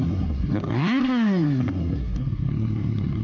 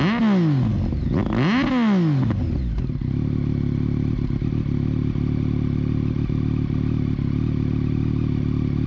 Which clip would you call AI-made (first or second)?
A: first